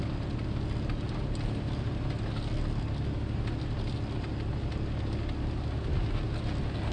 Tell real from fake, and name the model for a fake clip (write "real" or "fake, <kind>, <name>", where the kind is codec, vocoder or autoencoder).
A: real